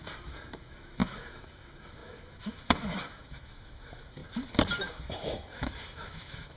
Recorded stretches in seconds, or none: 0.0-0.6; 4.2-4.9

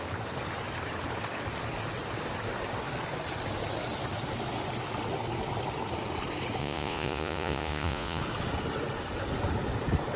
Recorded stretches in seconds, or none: 0.0-6.6; 8.2-10.2

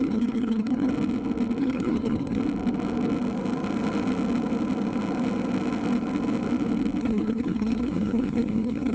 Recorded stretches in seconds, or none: 0.9-1.6; 2.4-7.0

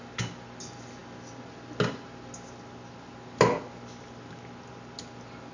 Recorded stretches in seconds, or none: 0.0-5.5

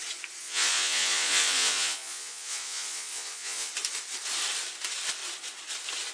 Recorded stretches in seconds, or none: 0.0-0.4; 3.7-6.1

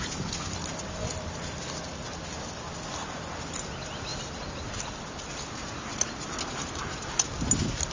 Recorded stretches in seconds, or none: 0.0-7.9